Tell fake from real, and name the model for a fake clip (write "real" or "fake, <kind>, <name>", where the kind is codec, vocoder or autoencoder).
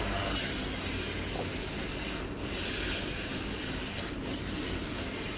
real